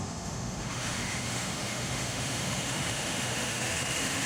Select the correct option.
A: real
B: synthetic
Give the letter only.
B